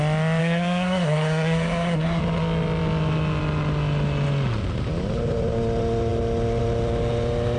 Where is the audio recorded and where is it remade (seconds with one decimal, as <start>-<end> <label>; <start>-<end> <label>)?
0.0-0.4 recorded; 0.4-2.2 remade; 2.2-7.6 recorded